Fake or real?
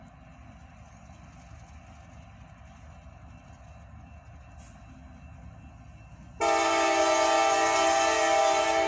real